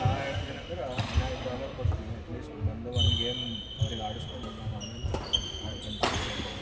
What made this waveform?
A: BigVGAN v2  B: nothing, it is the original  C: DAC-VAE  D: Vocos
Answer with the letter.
B